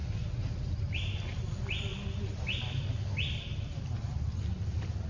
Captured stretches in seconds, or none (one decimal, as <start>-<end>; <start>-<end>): 0.0-5.1